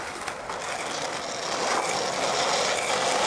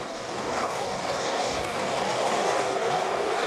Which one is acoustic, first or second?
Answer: first